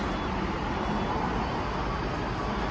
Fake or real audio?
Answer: real